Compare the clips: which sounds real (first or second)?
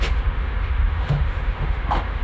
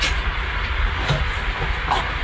second